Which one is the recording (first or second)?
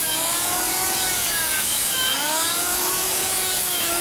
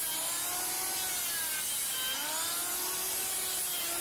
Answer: second